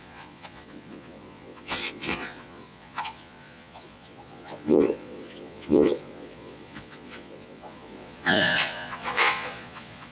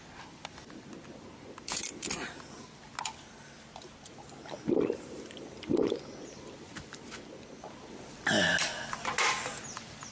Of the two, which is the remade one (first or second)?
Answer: first